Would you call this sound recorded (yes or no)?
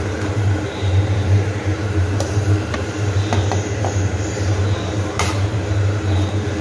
no